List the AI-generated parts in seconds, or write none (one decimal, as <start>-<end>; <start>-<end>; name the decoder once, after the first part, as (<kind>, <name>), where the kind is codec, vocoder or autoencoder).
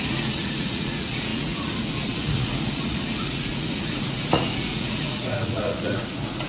0.0-6.5 (vocoder, Vocos)